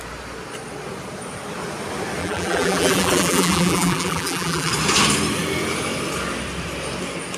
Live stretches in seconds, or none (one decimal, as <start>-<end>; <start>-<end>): 0.0-2.2; 4.7-7.4